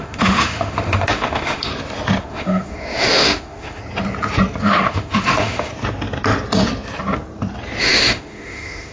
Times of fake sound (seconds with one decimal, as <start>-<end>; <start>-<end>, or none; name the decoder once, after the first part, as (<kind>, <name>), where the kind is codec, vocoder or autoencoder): 0.0-1.7 (autoencoder, DAC-VAE); 2.2-3.8; 4.6-5.7; 7.8-8.9